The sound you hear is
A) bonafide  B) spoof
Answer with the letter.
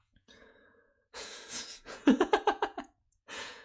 B